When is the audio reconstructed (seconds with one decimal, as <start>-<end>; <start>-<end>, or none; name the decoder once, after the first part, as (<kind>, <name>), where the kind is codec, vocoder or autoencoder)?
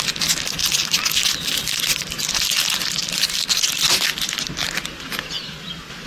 none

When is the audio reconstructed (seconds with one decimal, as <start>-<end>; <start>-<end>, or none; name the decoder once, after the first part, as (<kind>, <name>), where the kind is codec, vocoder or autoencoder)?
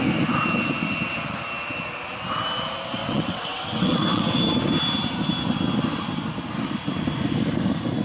3.0-4.4 (vocoder, WaveNeXt)